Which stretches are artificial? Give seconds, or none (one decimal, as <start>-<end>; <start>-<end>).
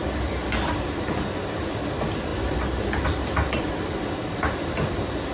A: 2.3-4.0